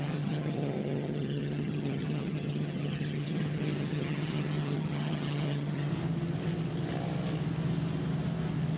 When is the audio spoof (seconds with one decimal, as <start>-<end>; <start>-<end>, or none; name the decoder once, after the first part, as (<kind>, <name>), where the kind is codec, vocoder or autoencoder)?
0.0-5.9 (vocoder, HiFi-GAN)